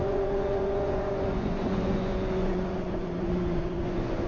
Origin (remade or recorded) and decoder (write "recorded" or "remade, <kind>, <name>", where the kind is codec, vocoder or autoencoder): remade, vocoder, Vocos